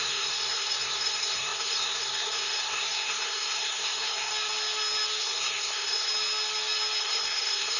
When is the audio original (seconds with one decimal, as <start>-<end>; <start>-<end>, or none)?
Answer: 4.3-5.2; 6.1-7.0